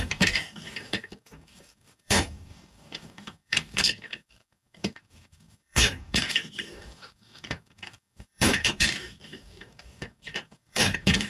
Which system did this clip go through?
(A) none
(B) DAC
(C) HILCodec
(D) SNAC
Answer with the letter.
B